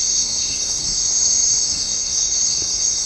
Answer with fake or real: fake